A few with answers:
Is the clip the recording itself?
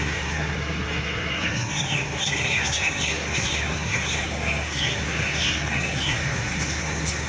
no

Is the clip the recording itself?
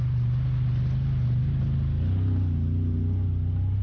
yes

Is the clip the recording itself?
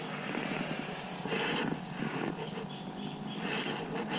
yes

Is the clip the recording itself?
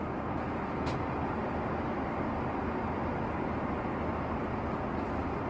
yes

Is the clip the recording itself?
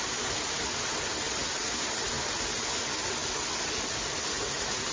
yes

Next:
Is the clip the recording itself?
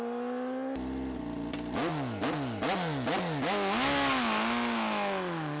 yes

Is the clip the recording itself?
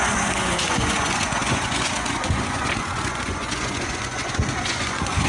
no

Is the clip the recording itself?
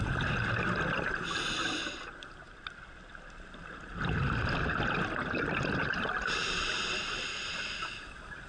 yes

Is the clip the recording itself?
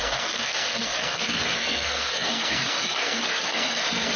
no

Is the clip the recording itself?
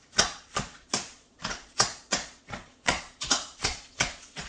no